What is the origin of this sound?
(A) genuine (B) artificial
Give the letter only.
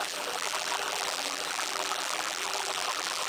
B